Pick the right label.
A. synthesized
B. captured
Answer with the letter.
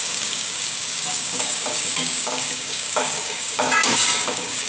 A